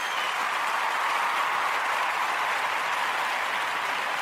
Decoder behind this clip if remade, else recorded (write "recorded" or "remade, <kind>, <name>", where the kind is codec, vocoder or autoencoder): recorded